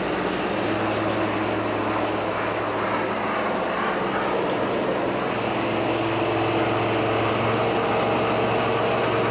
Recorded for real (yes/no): yes